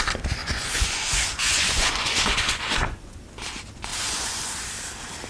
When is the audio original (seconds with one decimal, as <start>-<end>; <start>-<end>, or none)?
0.0-0.4; 3.2-3.9; 4.5-5.3

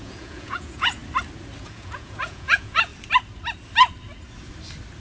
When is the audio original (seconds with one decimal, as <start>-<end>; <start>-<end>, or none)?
1.0-1.6; 2.9-5.0

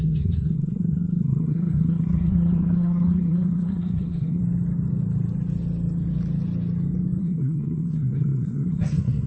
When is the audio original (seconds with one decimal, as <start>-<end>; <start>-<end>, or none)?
4.4-7.2